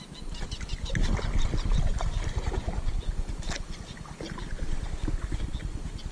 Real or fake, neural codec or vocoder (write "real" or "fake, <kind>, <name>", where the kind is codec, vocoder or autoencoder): real